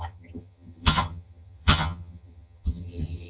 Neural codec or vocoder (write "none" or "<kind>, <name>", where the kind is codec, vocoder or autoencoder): vocoder, HiFi-GAN